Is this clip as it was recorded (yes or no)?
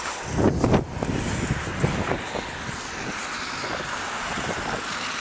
yes